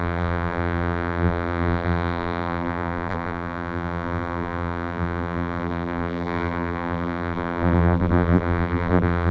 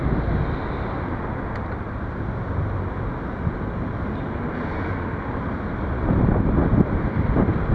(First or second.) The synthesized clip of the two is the first